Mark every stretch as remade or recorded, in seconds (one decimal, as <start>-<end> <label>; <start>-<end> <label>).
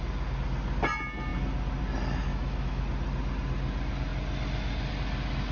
0.0-2.3 recorded; 2.3-2.8 remade; 2.8-5.5 recorded